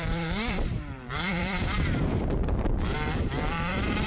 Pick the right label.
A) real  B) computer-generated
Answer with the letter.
B